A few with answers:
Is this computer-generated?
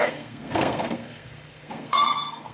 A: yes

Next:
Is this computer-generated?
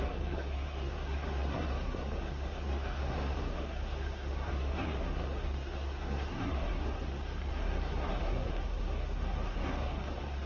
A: yes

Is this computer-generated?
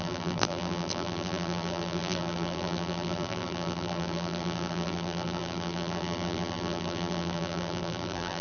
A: yes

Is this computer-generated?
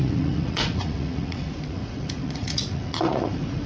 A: yes